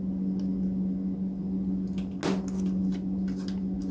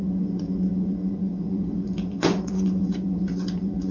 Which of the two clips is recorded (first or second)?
first